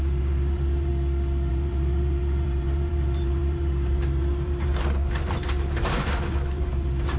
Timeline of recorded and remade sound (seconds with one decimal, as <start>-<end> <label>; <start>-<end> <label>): 0.0-0.9 remade; 0.9-1.5 recorded; 1.5-7.2 remade